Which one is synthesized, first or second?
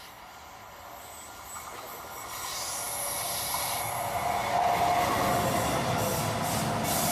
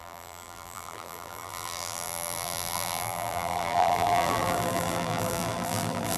second